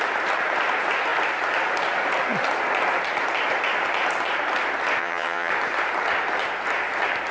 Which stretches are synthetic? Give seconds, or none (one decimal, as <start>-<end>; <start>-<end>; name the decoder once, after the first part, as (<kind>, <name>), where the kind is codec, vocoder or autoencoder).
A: 5.0-5.5 (vocoder, HiFi-GAN)